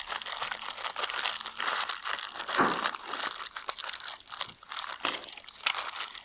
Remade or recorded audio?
recorded